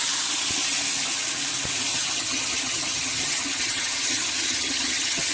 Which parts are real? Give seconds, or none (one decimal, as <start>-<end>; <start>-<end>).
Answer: 0.0-1.9